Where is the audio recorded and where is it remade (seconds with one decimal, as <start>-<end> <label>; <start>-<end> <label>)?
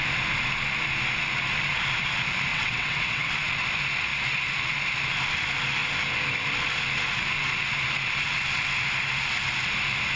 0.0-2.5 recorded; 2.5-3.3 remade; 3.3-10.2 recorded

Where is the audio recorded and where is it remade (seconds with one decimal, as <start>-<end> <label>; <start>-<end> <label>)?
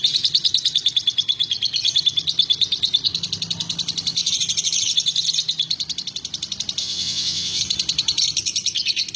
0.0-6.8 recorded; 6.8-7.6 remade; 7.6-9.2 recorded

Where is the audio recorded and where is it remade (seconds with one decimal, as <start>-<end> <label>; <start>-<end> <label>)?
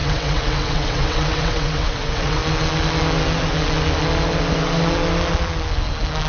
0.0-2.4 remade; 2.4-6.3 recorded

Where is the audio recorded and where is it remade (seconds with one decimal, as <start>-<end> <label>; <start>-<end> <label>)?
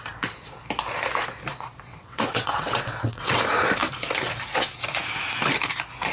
0.0-1.9 recorded; 1.9-3.4 remade; 3.4-6.1 recorded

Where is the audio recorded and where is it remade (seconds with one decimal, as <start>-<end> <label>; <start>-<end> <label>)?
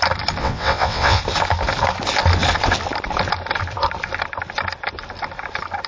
0.0-0.4 recorded; 0.4-1.2 remade; 1.2-5.9 recorded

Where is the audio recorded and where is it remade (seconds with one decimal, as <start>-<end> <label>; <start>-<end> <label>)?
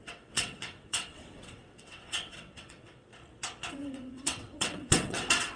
0.0-3.1 remade; 3.1-3.7 recorded; 3.7-5.6 remade